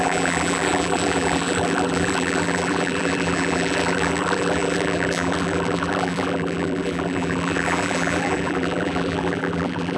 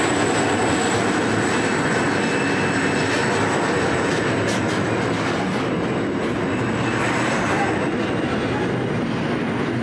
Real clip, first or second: second